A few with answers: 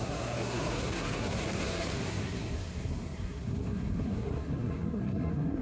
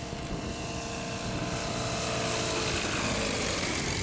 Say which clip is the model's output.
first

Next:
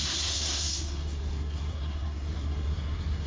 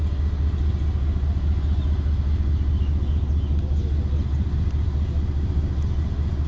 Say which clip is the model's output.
first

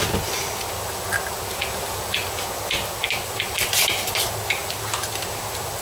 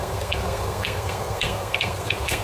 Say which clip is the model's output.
second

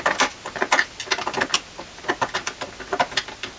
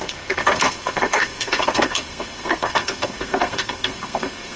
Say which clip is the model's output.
second